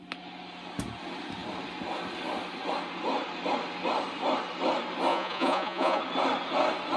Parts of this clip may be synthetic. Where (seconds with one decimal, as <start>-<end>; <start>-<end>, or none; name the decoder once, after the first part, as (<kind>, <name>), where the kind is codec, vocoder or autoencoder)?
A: 5.1-6.0 (vocoder, Vocos)